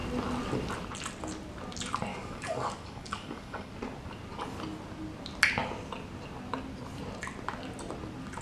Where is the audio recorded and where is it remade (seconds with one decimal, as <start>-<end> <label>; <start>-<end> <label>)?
0.0-2.1 recorded; 2.1-3.7 remade; 3.7-8.4 recorded